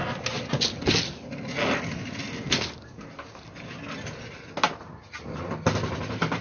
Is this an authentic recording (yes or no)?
yes